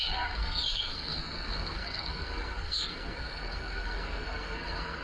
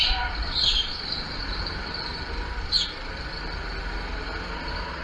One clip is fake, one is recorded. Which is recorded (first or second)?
second